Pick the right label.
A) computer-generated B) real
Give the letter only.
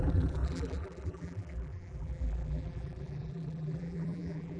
A